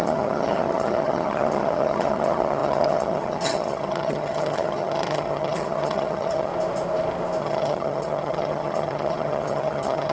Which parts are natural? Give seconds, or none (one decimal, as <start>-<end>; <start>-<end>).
6.5-7.4